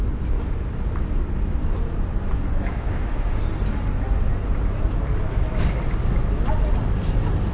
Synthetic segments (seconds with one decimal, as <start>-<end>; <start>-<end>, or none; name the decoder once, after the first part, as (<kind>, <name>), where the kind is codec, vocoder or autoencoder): 2.7-3.4 (autoencoder, DAC-VAE)